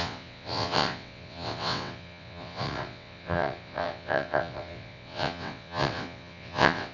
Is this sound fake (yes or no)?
yes